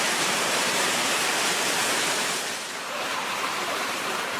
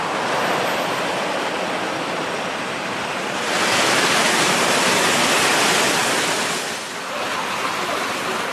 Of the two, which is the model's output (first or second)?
first